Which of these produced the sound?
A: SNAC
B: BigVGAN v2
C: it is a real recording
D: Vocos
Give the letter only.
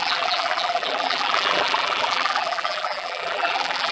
B